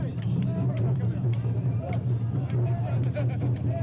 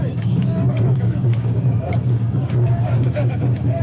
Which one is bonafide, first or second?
first